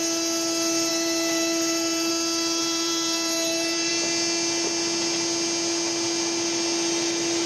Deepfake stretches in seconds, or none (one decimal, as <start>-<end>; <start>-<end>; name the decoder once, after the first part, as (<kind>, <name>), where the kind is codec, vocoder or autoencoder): 0.9-2.1 (vocoder, BigVGAN v2); 2.6-3.9